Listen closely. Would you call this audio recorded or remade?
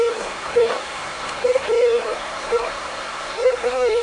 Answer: remade